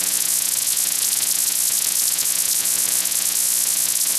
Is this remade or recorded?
remade